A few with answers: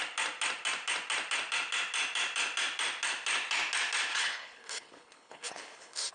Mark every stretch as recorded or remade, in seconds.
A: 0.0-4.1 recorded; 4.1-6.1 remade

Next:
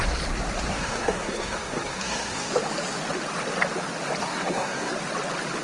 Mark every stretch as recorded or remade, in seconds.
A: 0.0-0.7 recorded; 0.7-2.5 remade; 2.5-4.2 recorded; 4.2-4.9 remade; 4.9-5.6 recorded